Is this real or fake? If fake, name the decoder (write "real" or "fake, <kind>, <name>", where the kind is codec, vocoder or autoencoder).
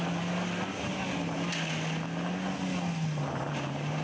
real